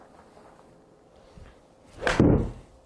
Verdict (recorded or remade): recorded